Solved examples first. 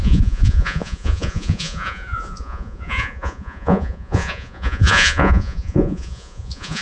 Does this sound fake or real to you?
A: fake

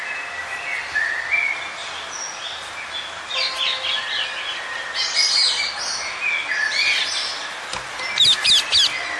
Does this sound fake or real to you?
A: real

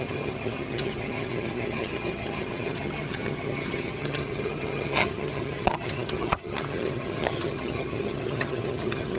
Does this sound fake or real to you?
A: fake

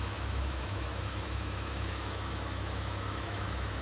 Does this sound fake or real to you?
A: fake